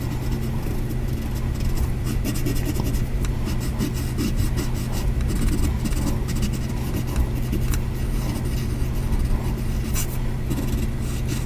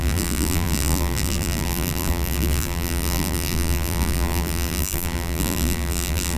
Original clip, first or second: first